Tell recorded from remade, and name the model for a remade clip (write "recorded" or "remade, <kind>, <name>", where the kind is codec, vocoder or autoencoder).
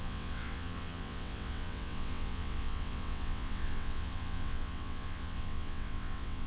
remade, vocoder, WaveNeXt